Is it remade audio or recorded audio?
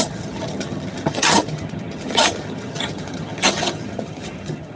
remade